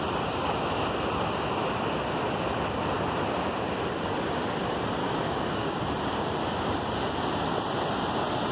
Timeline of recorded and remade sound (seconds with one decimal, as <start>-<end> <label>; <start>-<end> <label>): 0.0-5.0 recorded; 5.0-5.8 remade; 5.8-8.5 recorded